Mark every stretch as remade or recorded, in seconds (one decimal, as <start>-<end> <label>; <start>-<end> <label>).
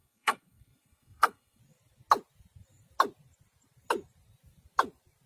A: 0.0-1.6 remade; 1.6-5.3 recorded